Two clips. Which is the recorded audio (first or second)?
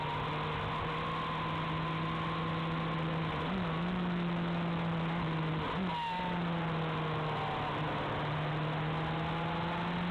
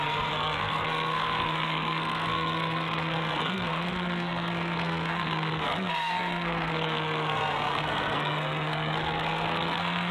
first